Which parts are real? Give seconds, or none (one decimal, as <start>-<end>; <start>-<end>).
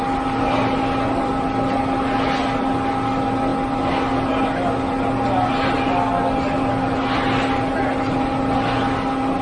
0.0-9.4